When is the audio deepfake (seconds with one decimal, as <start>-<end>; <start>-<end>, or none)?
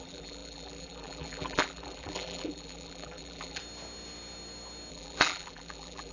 0.0-3.6; 4.9-6.1